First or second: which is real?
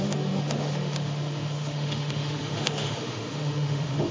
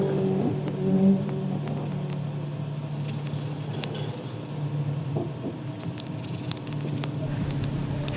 second